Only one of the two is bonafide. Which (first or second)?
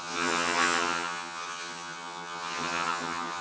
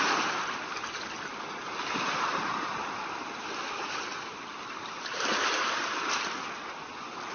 second